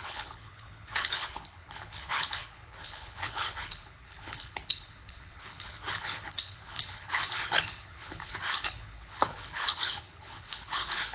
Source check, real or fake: fake